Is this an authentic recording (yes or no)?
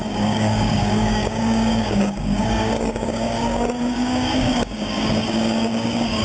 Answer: no